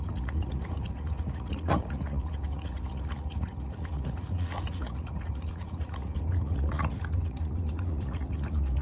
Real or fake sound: fake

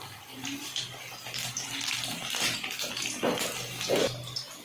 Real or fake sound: real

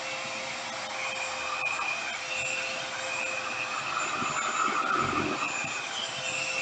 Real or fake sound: real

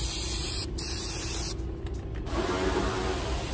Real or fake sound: real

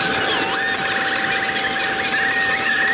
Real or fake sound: real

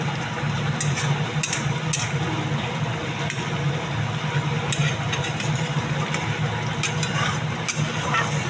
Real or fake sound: real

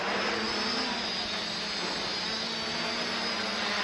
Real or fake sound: real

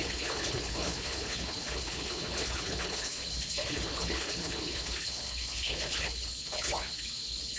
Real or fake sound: fake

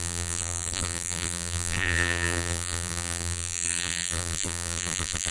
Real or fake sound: fake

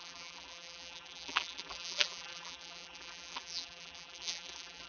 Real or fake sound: fake